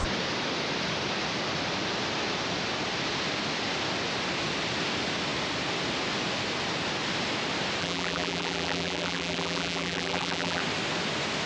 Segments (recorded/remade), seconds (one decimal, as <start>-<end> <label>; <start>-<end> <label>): 0.0-7.8 recorded; 7.8-10.6 remade; 10.6-11.5 recorded